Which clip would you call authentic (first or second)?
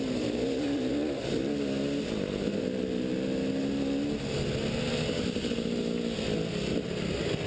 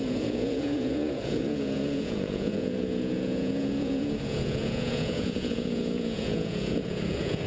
first